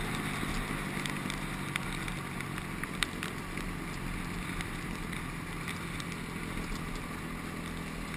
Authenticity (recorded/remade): recorded